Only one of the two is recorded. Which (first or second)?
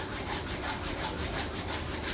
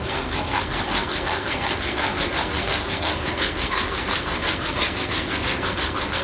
first